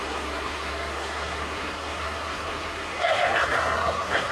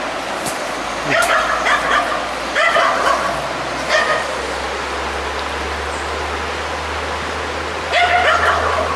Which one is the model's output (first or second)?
first